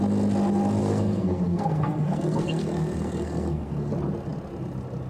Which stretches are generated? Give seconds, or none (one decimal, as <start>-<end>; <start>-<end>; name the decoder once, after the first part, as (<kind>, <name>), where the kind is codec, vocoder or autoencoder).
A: 0.8-3.9 (codec, SNAC)